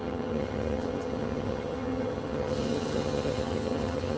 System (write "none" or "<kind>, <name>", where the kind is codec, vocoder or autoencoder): vocoder, HiFi-GAN